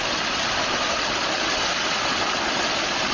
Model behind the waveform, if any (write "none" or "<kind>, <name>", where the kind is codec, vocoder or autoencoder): none